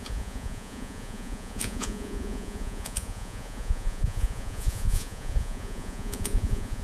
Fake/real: fake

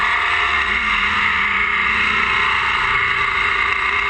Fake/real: fake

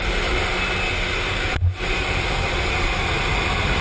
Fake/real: real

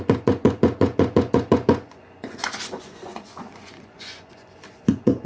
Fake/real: fake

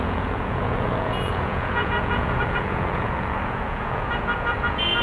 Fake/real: fake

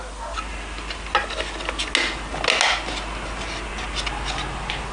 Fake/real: real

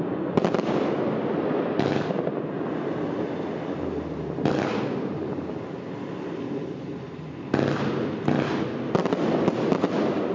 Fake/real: real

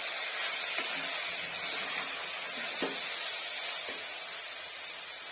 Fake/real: real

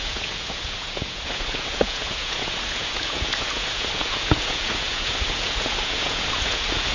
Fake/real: fake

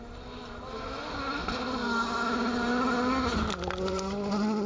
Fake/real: real